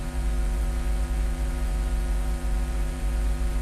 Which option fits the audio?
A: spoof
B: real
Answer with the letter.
A